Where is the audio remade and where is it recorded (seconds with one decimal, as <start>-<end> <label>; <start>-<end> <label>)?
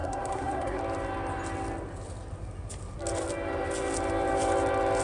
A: 0.0-0.8 remade; 0.8-5.0 recorded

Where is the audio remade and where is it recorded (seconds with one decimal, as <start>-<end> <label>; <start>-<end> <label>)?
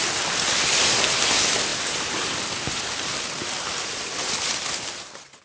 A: 0.0-5.4 recorded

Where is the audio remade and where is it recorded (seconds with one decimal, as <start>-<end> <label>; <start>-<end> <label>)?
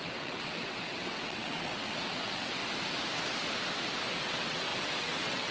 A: 0.0-2.6 remade; 2.6-4.2 recorded; 4.2-5.5 remade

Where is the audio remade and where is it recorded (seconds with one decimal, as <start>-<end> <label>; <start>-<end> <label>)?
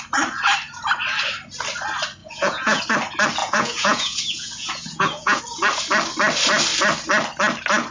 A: 0.0-2.2 recorded; 2.2-2.8 remade; 2.8-3.4 recorded; 3.4-5.4 remade; 5.4-7.9 recorded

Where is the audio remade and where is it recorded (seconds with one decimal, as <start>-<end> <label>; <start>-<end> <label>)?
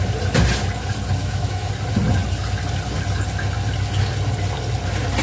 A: 0.0-1.2 recorded; 1.2-1.7 remade; 1.7-5.2 recorded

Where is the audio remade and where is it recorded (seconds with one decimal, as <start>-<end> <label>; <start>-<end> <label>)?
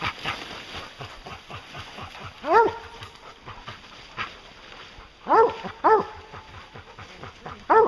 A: 0.0-1.1 recorded; 1.1-2.2 remade; 2.2-7.9 recorded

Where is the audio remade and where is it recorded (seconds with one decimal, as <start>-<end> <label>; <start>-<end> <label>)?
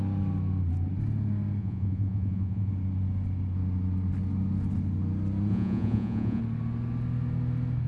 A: 0.0-1.6 recorded; 1.6-2.7 remade; 2.7-5.5 recorded; 5.5-6.4 remade; 6.4-7.9 recorded